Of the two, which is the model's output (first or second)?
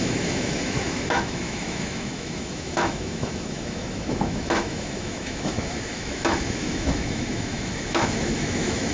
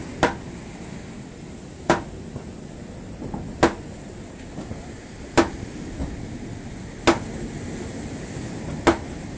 first